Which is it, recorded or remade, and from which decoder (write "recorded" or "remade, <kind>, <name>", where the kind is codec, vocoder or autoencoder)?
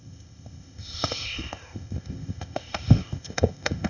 remade, codec, ZipCodec